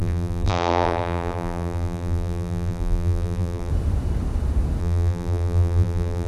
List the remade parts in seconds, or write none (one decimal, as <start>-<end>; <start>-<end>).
0.0-3.7; 4.8-6.3